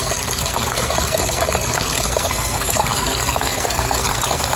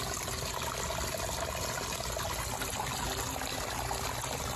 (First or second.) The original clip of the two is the second